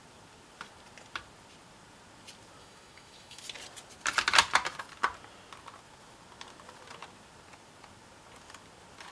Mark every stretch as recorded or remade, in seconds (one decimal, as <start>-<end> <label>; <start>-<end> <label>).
0.0-2.6 recorded; 2.6-3.4 remade; 3.4-9.1 recorded